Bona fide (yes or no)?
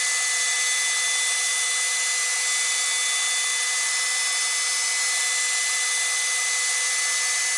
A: yes